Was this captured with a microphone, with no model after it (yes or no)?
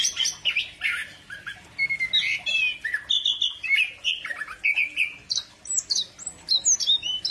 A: yes